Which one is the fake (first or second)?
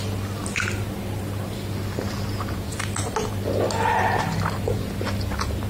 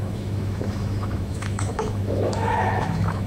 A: second